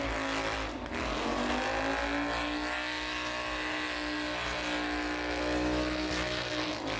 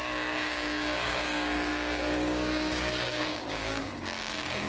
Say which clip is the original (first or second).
first